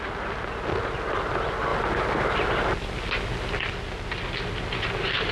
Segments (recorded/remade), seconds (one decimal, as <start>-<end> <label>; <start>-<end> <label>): 0.0-5.3 recorded